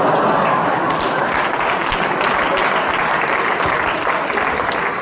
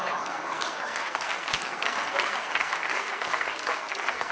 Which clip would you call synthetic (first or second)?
second